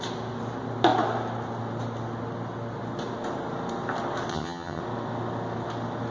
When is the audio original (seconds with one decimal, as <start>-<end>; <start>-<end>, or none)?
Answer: 0.0-4.3; 4.8-6.1